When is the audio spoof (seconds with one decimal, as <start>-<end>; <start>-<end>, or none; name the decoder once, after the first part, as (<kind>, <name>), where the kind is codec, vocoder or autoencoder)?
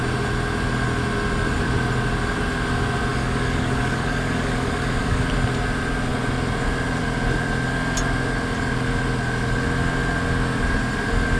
3.1-5.2 (codec, DAC)